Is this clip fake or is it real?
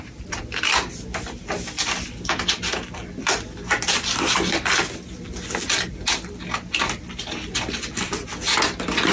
real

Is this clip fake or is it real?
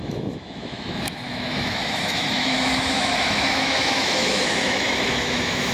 fake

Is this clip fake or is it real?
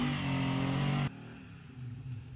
real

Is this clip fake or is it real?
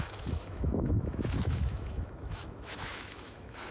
fake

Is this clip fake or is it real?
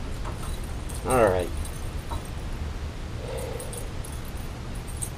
real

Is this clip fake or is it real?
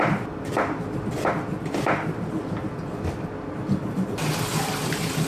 real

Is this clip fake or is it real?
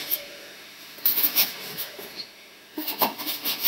fake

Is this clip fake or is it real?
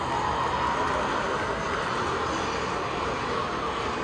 real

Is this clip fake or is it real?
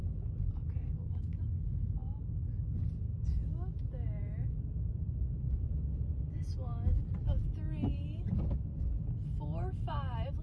real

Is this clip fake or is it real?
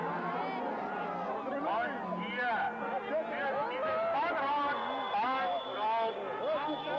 real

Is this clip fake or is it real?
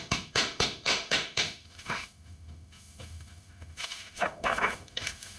fake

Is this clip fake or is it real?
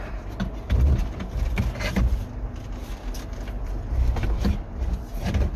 real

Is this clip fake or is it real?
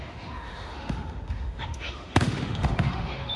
fake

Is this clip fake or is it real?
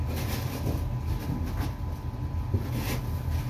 real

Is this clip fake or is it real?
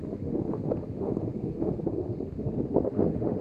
fake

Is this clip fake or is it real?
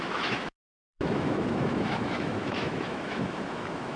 fake